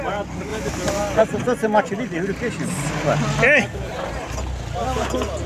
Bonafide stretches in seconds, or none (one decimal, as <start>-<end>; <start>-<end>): 0.0-5.5